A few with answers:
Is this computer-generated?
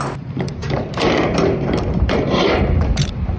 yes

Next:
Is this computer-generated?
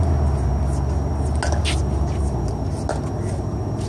no